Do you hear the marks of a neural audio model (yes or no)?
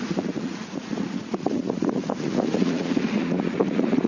yes